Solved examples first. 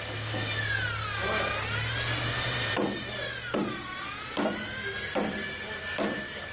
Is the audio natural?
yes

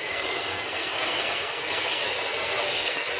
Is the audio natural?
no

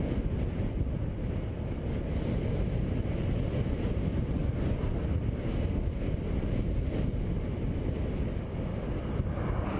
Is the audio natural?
yes